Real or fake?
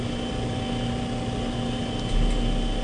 real